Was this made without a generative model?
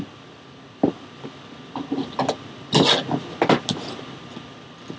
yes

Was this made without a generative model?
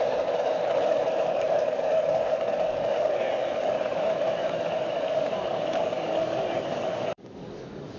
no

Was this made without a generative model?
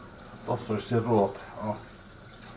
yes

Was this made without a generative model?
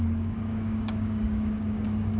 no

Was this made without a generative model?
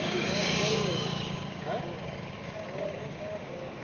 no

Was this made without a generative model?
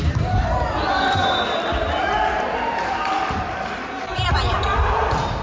yes